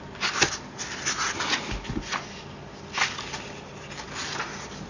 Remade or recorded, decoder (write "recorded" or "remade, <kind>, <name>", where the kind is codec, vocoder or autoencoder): recorded